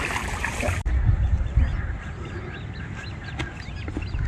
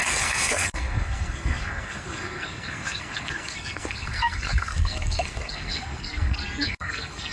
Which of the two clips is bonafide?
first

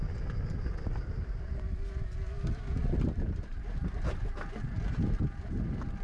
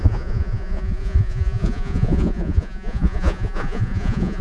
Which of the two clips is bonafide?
first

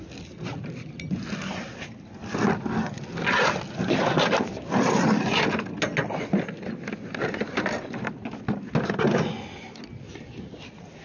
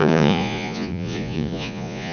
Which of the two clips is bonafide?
first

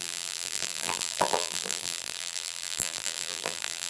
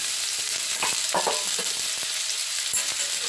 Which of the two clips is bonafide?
second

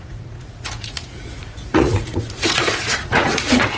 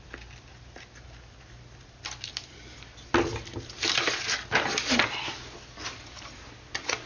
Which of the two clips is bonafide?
second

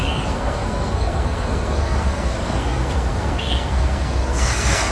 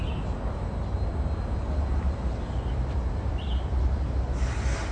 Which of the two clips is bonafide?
second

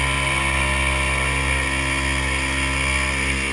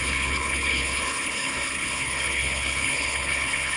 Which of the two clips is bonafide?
first